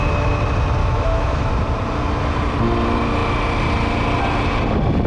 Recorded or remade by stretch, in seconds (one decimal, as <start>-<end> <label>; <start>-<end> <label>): 0.0-0.8 recorded; 0.8-1.5 remade; 1.5-5.1 recorded